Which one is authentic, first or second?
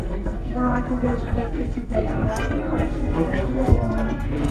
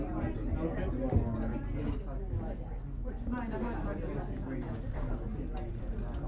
second